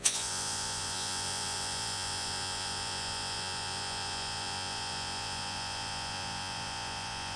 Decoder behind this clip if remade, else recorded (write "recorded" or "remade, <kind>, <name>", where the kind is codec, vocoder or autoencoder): remade, vocoder, Vocos